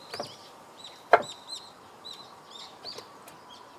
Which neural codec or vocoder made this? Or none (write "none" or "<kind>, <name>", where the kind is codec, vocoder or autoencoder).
none